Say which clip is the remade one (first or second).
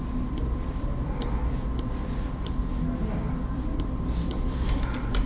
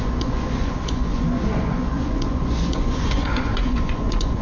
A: second